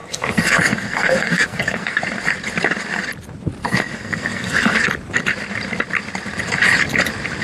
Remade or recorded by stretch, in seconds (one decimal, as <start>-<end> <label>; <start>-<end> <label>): 0.0-2.0 remade; 2.0-3.6 recorded; 3.6-4.9 remade; 4.9-7.4 recorded

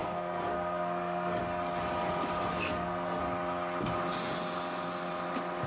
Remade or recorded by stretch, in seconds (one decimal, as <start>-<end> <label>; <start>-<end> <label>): 0.0-1.4 remade; 1.4-2.5 recorded; 2.5-3.2 remade; 3.2-5.7 recorded

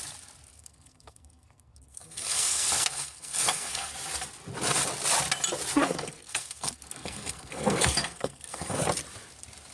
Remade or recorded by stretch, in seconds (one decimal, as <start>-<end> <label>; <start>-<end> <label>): 0.0-0.5 recorded; 0.5-3.9 remade; 3.9-5.7 recorded; 5.7-8.8 remade; 8.8-9.7 recorded

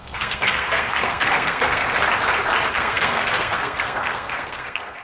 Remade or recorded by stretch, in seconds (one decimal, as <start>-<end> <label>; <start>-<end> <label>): 0.0-1.8 remade; 1.8-2.7 recorded; 2.7-5.0 remade

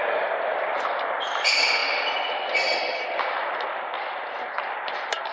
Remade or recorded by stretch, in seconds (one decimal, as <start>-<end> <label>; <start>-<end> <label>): 0.0-5.3 recorded